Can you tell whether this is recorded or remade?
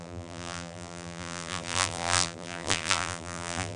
remade